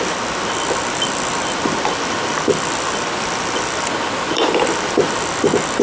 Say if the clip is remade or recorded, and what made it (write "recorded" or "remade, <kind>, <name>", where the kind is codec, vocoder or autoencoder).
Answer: recorded